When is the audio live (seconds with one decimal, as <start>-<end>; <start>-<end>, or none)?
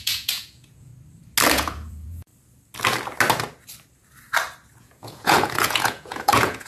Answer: 0.9-1.5; 2.3-4.8